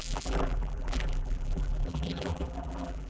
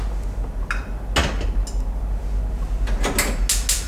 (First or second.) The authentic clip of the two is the second